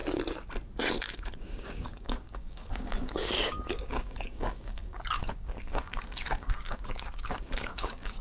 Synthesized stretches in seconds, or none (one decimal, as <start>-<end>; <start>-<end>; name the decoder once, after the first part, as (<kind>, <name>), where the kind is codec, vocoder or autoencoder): 1.0-8.2 (codec, DAC)